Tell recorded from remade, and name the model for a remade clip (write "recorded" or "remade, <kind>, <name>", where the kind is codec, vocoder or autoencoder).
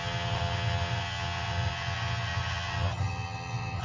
remade, vocoder, HiFi-GAN